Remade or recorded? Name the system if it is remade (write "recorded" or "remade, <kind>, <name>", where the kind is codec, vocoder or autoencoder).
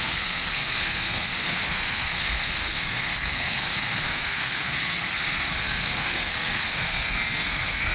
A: remade, codec, SNAC